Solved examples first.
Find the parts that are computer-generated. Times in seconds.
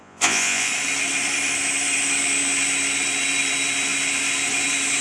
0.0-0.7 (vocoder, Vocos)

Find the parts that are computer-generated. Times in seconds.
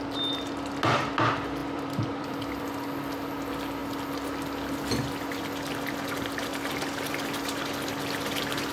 1.6-2.6 (vocoder, BigVGAN v2)